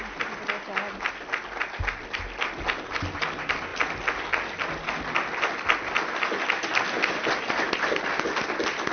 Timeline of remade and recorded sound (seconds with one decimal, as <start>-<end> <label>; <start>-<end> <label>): 0.0-8.9 recorded